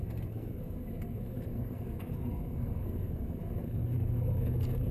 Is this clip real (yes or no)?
no